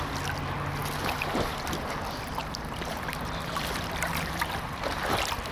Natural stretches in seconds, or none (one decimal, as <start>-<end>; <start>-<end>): 0.0-0.8; 1.6-2.4; 5.0-5.5